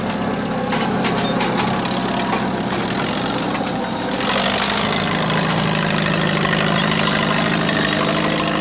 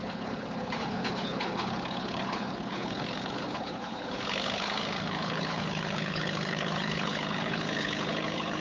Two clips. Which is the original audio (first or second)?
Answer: first